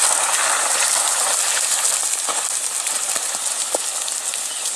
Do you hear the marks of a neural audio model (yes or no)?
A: no